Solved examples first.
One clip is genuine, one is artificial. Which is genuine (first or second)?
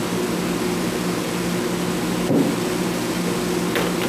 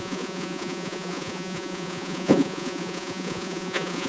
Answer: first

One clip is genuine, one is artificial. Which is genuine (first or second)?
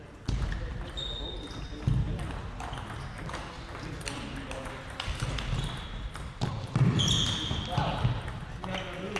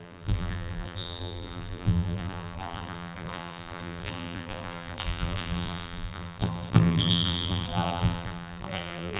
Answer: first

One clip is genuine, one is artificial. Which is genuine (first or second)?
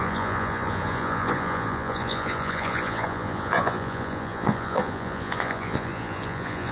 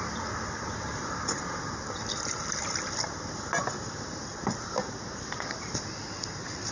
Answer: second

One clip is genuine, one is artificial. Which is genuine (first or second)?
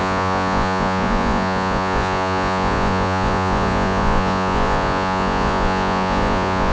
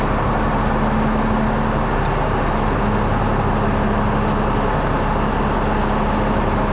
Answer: second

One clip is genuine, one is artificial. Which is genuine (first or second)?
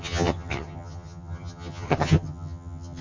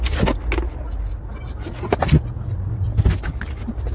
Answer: second